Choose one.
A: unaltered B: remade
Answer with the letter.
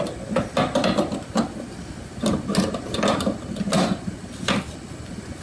A